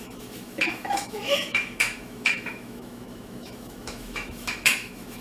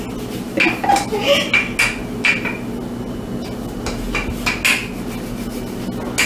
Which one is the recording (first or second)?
second